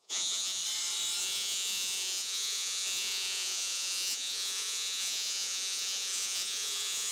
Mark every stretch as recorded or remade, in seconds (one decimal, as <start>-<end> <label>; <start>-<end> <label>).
0.0-0.6 remade; 0.6-1.2 recorded; 1.2-7.1 remade